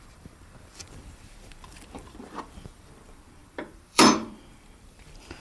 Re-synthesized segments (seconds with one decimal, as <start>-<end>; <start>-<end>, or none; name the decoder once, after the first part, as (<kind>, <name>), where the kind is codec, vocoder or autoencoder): 0.0-5.4 (vocoder, BigVGAN v2)